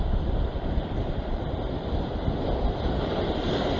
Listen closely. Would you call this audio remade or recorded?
remade